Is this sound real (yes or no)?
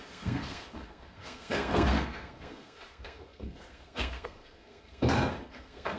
no